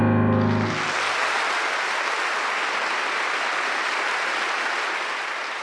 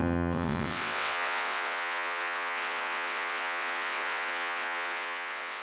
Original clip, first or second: first